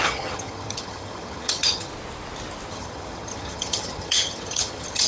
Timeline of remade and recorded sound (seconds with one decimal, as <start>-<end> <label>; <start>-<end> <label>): 0.0-1.9 remade; 1.9-2.7 recorded; 2.7-5.1 remade

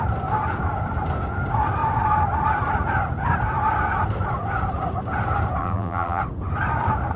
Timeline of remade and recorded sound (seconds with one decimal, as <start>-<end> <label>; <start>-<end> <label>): 0.0-5.6 recorded; 5.6-6.2 remade; 6.2-7.2 recorded

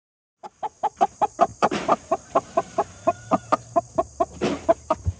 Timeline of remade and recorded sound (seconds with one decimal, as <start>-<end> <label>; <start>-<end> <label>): 0.0-0.9 recorded; 0.9-5.2 remade

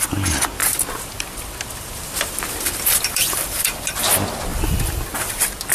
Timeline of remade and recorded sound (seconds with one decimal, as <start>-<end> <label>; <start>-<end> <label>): 0.0-0.6 recorded; 0.6-4.0 remade; 4.0-4.5 recorded; 4.5-5.7 remade

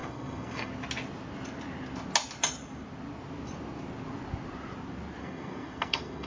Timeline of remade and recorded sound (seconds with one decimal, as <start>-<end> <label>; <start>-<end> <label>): 0.0-0.7 remade; 0.7-5.2 recorded; 5.2-6.3 remade

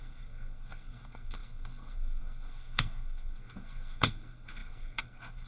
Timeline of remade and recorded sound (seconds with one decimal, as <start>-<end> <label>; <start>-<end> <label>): 0.0-5.5 remade